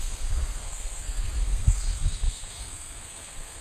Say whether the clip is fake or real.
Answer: fake